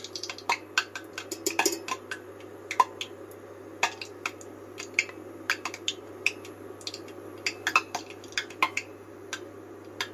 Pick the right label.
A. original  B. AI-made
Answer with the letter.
A